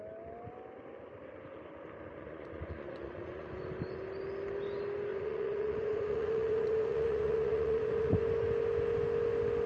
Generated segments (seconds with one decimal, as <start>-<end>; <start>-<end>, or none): 2.1-3.6; 5.1-8.2